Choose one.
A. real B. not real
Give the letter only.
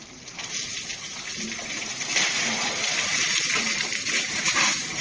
B